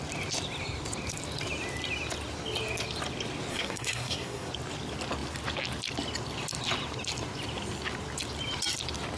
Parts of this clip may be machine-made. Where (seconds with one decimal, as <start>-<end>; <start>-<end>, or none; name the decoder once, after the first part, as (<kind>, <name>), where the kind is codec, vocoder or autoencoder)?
3.5-4.5 (codec, SNAC)